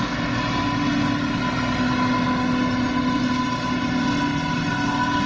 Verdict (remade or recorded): recorded